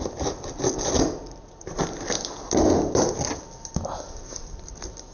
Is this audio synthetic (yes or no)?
no